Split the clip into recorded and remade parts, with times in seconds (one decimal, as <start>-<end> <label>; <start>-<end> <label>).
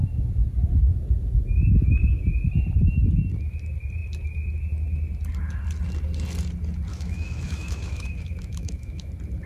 0.0-6.9 recorded; 6.9-9.1 remade; 9.1-9.5 recorded